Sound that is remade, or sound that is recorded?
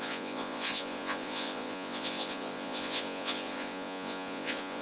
remade